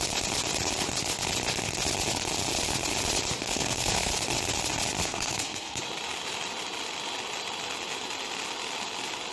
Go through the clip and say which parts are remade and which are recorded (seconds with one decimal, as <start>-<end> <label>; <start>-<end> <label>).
0.0-3.5 recorded; 3.5-4.1 remade; 4.1-5.0 recorded; 5.0-5.8 remade; 5.8-9.3 recorded